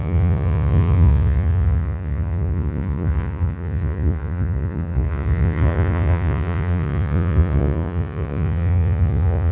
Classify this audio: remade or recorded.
remade